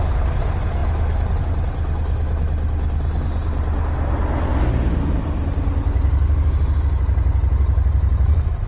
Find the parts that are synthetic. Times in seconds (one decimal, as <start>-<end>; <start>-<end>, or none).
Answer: none